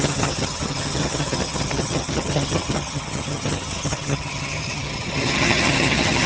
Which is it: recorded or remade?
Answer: remade